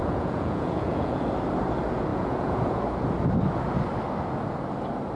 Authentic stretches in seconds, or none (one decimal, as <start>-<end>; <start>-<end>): 1.2-2.1; 2.8-5.2